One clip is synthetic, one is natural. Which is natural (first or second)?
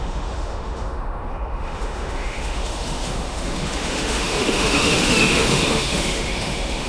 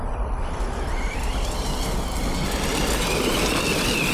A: second